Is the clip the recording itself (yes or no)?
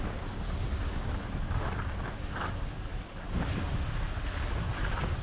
yes